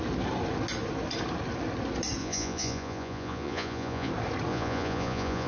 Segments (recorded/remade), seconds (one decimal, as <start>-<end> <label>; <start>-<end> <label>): 0.0-2.2 recorded; 2.2-4.1 remade; 4.1-4.5 recorded; 4.5-5.5 remade